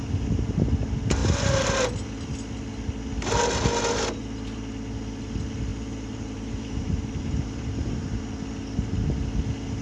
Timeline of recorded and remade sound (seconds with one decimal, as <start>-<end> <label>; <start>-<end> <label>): 0.0-5.7 recorded; 5.7-8.2 remade; 8.2-9.8 recorded

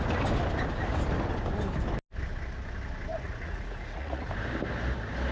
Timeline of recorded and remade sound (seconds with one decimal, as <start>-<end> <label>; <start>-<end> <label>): 0.0-3.1 recorded; 3.1-4.3 remade; 4.3-5.3 recorded

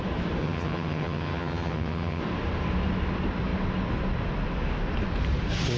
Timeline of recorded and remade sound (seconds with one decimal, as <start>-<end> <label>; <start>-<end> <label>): 0.0-0.4 recorded; 0.4-2.2 remade; 2.2-5.8 recorded

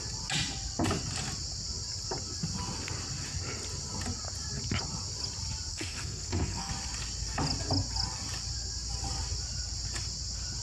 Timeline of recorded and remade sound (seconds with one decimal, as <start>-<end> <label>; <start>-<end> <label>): 0.0-5.7 recorded; 5.7-6.7 remade; 6.7-10.6 recorded

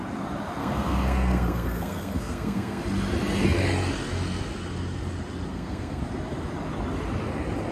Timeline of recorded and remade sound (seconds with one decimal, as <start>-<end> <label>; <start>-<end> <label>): 0.0-0.6 recorded; 0.6-2.8 remade; 2.8-5.5 recorded; 5.5-6.0 remade; 6.0-7.7 recorded

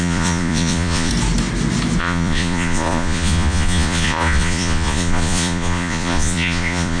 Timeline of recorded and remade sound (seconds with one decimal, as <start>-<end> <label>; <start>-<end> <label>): 0.0-1.1 remade; 1.1-2.0 recorded; 2.0-7.0 remade

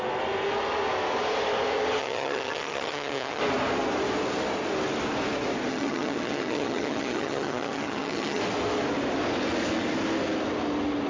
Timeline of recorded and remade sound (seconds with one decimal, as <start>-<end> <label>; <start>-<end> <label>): 0.0-2.0 recorded; 2.0-3.4 remade; 3.4-5.7 recorded; 5.7-8.4 remade; 8.4-11.1 recorded

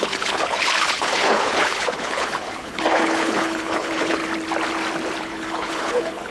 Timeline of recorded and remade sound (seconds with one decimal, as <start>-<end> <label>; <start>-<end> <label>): 0.0-4.2 remade; 4.2-5.2 recorded; 5.2-6.3 remade